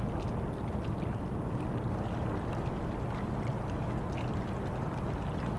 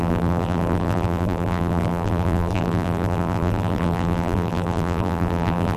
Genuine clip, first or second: first